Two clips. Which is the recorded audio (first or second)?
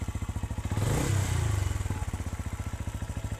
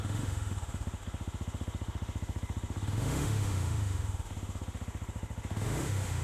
first